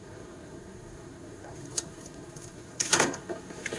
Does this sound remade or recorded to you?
remade